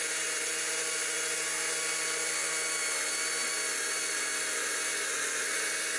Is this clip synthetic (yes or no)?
no